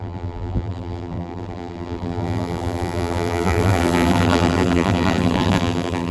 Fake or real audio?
fake